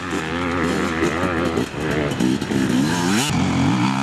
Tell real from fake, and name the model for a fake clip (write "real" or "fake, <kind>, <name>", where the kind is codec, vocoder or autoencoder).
real